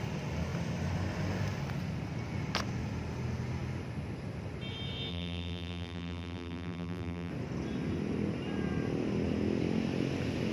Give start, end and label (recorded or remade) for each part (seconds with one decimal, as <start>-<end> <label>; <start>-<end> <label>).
0.0-5.1 recorded; 5.1-7.3 remade; 7.3-10.5 recorded